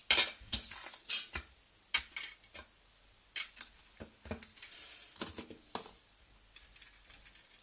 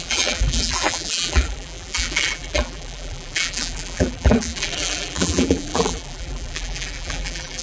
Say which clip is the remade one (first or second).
second